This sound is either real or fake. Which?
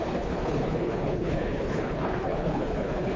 fake